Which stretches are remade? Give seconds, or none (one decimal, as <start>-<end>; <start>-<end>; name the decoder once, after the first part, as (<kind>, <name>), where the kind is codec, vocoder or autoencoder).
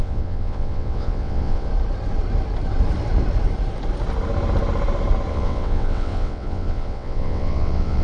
0.0-1.7 (vocoder, WaveNeXt); 5.3-8.0